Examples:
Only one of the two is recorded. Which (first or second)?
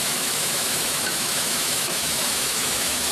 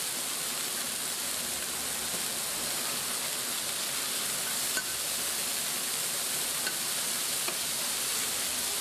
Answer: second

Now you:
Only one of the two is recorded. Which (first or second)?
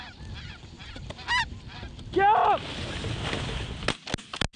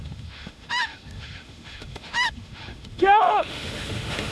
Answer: first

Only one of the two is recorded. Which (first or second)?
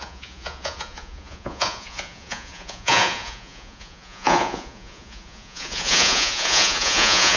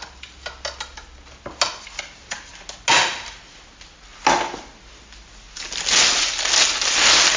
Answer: second